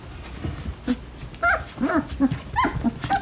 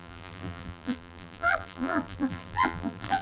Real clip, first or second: first